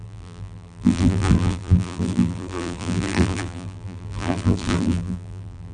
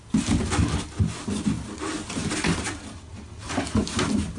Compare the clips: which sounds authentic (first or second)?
second